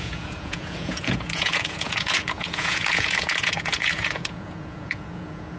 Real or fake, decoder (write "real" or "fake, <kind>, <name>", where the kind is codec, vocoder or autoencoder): fake, vocoder, Vocos